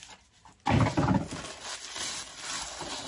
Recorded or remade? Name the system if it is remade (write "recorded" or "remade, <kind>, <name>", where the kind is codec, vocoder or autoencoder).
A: recorded